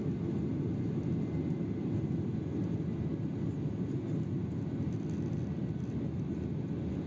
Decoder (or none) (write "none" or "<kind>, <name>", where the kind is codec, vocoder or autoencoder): none